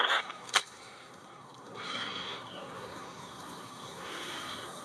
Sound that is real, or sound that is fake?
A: fake